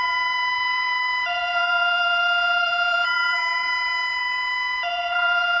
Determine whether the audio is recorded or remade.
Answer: remade